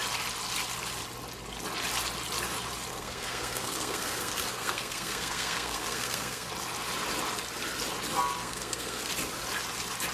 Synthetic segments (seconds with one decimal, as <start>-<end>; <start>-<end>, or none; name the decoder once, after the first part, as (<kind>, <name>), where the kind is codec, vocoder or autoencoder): 2.9-6.5 (codec, SNAC); 8.4-9.1